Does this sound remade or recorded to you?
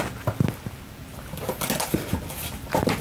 recorded